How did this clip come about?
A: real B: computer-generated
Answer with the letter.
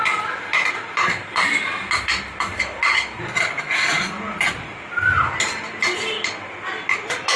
A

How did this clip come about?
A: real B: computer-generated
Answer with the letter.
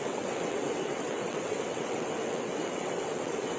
B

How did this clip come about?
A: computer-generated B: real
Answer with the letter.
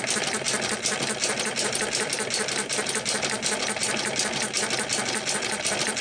B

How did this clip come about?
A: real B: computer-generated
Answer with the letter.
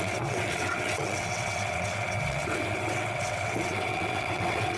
B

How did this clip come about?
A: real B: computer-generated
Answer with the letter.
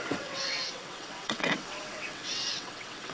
B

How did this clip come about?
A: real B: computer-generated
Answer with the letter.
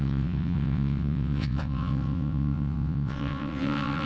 B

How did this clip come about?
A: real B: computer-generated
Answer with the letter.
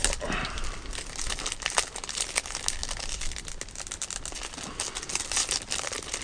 A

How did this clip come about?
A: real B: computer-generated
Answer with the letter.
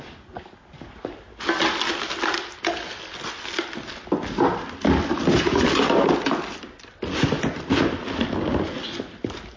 A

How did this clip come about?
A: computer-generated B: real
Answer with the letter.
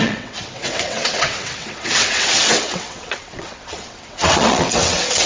A